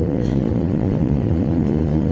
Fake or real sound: fake